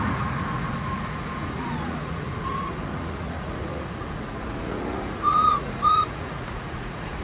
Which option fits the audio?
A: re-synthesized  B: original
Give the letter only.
A